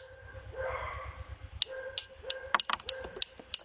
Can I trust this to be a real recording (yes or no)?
yes